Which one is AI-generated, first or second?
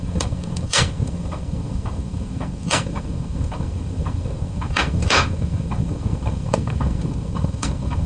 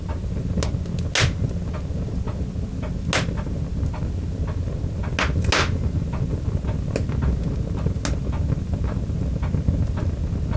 first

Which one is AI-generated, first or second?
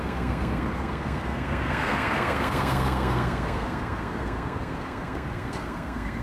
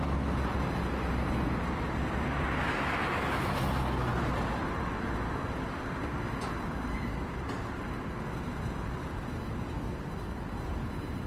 first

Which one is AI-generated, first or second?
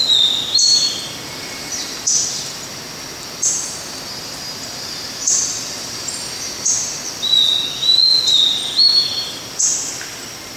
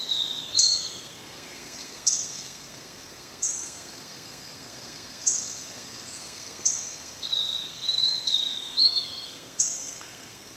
second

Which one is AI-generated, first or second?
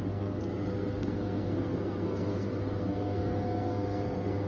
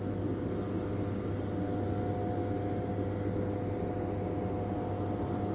first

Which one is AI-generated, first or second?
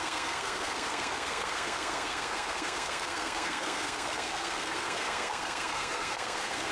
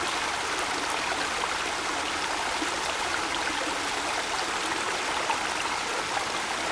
first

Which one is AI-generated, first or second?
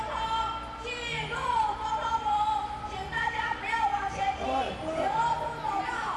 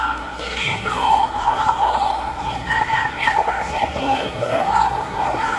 second